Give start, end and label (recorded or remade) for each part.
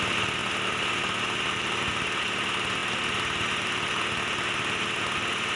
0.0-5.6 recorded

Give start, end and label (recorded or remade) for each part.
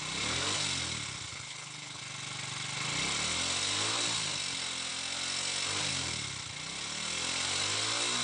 0.0-1.3 recorded; 1.3-2.0 remade; 2.0-8.2 recorded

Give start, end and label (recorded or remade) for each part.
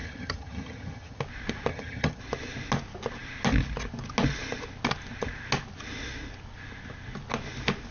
0.0-1.2 remade; 1.2-1.7 recorded; 1.7-2.2 remade; 2.2-7.9 recorded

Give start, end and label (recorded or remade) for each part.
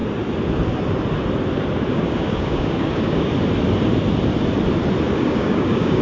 0.0-1.9 recorded; 1.9-3.3 remade; 3.3-5.2 recorded; 5.2-6.0 remade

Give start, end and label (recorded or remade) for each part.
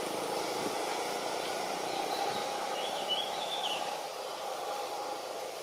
0.0-2.4 recorded; 2.4-4.1 remade; 4.1-5.6 recorded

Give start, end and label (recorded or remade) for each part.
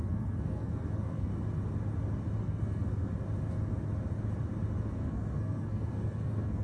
0.0-1.3 remade; 1.3-2.4 recorded; 2.4-3.1 remade; 3.1-4.8 recorded; 4.8-6.6 remade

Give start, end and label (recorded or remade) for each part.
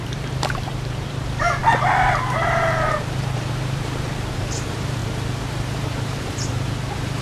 0.0-1.6 remade; 1.6-2.9 recorded; 2.9-7.2 remade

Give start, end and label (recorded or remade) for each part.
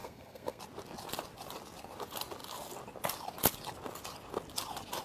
0.0-0.6 remade; 0.6-5.0 recorded